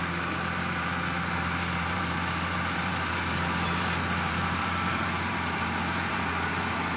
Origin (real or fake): fake